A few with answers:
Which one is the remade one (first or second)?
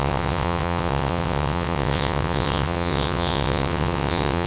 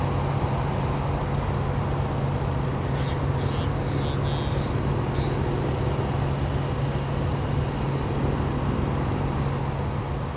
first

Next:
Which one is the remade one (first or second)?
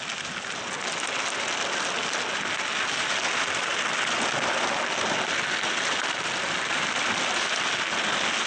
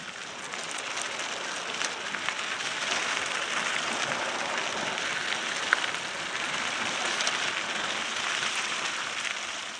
second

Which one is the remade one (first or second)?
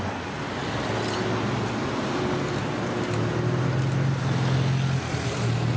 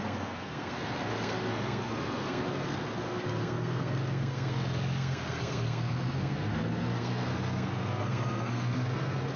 second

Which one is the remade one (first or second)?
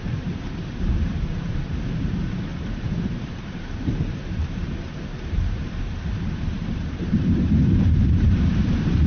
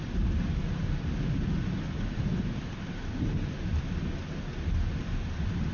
first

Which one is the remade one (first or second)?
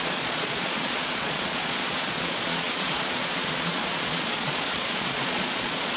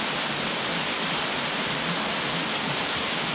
first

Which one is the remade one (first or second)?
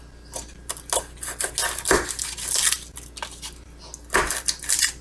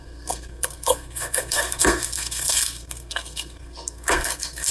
second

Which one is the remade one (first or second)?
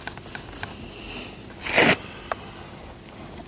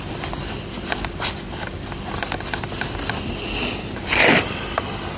second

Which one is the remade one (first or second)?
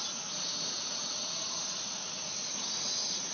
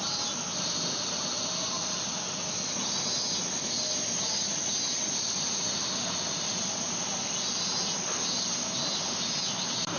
first